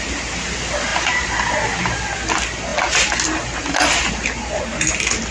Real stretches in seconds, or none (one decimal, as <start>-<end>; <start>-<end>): 0.0-0.9; 2.0-2.7; 4.6-5.3